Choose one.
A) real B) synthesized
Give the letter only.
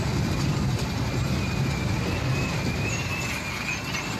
A